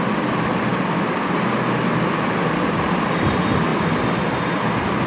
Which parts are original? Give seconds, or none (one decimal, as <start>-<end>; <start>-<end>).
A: 0.0-5.1